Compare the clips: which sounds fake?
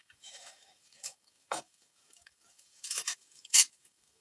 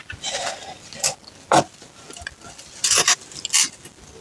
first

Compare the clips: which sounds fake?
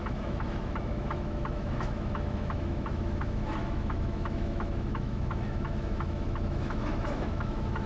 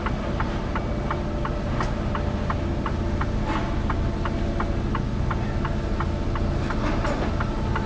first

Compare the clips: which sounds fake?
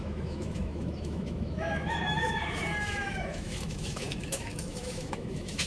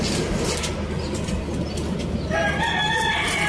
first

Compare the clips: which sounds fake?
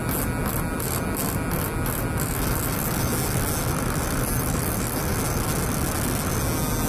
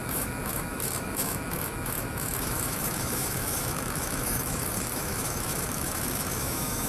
second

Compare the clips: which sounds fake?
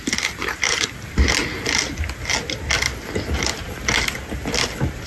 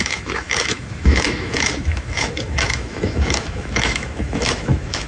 second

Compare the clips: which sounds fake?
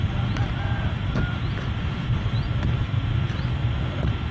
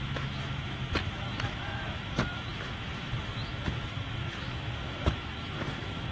second